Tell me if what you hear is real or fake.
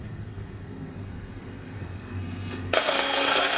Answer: fake